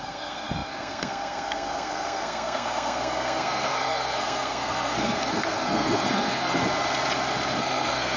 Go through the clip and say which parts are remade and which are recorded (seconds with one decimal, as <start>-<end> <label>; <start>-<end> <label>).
0.0-6.6 remade; 6.6-7.6 recorded; 7.6-8.2 remade